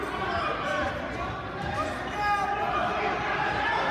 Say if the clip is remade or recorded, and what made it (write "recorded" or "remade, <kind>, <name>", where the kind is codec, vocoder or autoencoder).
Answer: recorded